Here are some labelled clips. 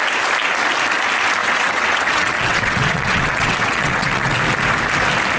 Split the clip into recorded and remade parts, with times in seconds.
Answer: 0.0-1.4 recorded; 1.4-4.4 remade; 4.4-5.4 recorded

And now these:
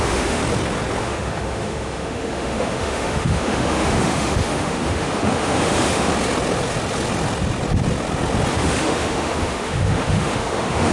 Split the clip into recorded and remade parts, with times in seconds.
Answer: 0.0-0.4 remade; 0.4-1.0 recorded; 1.0-6.1 remade; 6.1-8.5 recorded; 8.5-10.9 remade

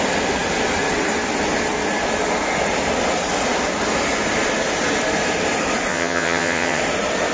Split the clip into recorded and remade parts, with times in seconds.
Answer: 0.0-5.9 recorded; 5.9-6.8 remade; 6.8-7.3 recorded

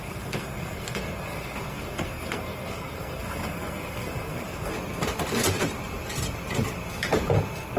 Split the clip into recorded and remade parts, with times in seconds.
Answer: 0.0-4.7 remade; 4.7-7.8 recorded